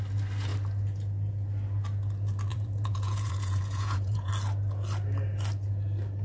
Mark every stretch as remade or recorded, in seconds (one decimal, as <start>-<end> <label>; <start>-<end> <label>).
0.0-2.5 recorded; 2.5-4.3 remade; 4.3-6.2 recorded